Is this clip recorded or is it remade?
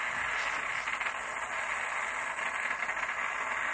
recorded